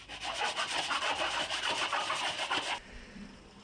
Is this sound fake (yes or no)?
no